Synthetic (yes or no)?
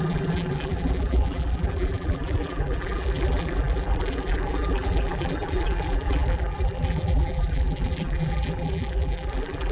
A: yes